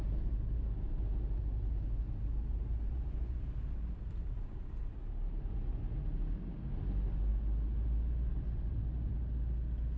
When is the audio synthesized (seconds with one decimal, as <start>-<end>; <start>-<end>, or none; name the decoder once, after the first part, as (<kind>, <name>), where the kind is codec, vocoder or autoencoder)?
1.4-2.1 (vocoder, BigVGAN v2); 2.5-3.4